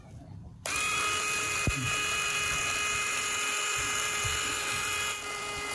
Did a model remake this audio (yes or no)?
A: no